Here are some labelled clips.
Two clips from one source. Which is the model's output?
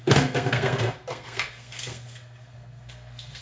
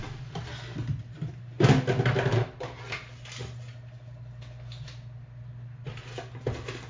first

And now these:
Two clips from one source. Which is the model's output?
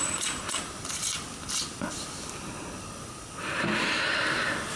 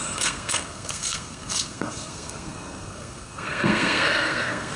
second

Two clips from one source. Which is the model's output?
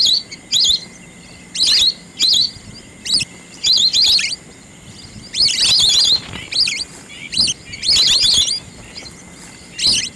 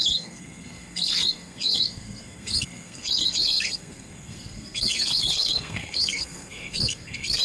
second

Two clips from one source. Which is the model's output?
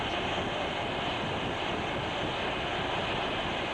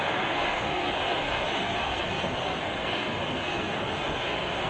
second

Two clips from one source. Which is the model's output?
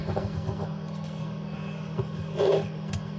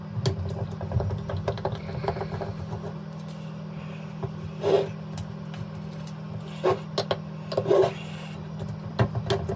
first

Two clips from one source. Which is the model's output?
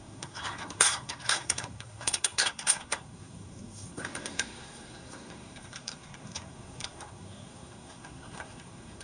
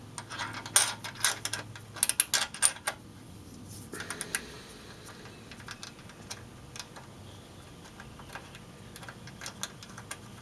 first